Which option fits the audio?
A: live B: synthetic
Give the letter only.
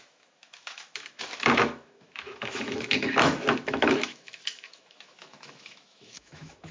B